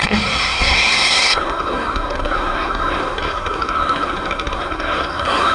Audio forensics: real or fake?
fake